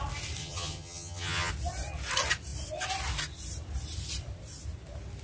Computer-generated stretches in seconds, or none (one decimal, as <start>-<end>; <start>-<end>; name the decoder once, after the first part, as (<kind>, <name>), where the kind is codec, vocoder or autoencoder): 0.4-1.5 (vocoder, HiFi-GAN)